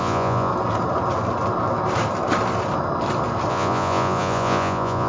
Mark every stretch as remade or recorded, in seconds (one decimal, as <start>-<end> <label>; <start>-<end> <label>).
0.0-0.5 remade; 0.5-3.5 recorded; 3.5-5.1 remade